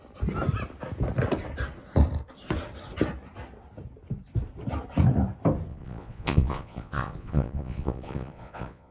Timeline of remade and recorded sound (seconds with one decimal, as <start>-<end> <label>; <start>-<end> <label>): 0.0-5.7 recorded; 5.7-8.9 remade